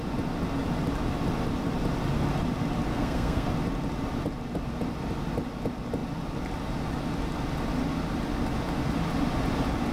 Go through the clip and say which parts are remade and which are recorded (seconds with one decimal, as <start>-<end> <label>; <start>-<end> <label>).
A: 0.0-2.9 recorded; 2.9-3.5 remade; 3.5-9.9 recorded